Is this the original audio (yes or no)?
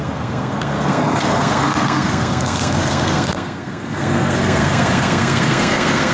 no